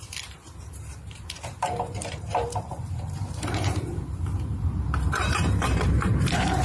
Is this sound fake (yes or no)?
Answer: yes